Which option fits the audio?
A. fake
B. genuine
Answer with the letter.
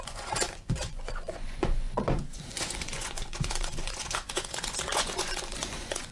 A